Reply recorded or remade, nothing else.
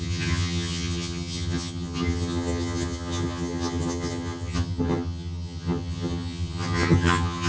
remade